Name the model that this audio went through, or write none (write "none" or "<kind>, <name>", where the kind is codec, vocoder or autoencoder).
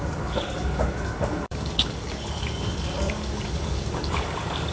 codec, DAC